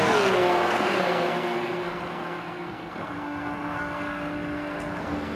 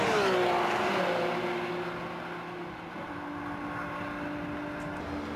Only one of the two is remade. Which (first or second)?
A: first